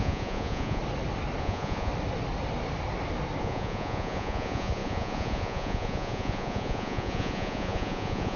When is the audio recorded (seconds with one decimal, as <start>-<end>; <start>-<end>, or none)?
0.8-1.4; 1.9-3.4